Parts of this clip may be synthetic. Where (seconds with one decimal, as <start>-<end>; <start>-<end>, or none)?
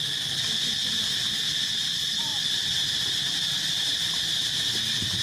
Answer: 2.3-3.0; 4.4-5.2